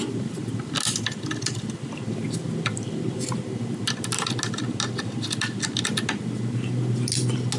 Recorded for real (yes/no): yes